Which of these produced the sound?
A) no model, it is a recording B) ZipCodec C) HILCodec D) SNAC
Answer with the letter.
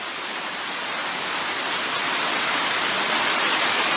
A